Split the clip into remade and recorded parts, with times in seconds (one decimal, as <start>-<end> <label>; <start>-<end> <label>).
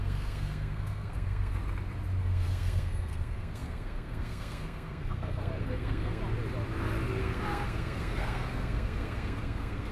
0.0-1.6 remade; 1.6-2.2 recorded; 2.2-6.2 remade; 6.2-7.2 recorded; 7.2-9.9 remade